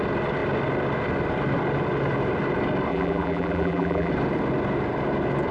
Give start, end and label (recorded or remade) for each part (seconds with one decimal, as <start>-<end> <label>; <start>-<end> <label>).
0.0-2.9 recorded; 2.9-4.1 remade; 4.1-5.5 recorded